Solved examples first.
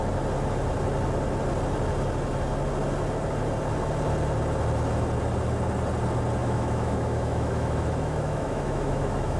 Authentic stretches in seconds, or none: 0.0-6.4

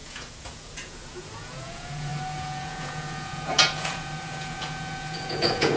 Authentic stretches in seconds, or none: none

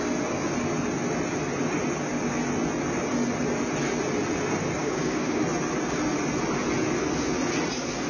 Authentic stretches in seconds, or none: 0.0-4.8; 5.4-8.1

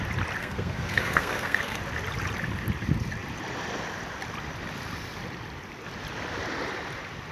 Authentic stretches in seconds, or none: 0.0-0.4; 1.8-7.3

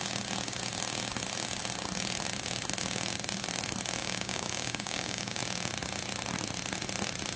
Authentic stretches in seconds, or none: 0.0-4.0; 5.4-7.4

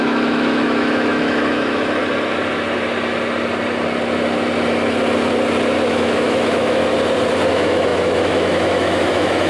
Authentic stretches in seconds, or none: 2.0-5.9; 6.8-7.5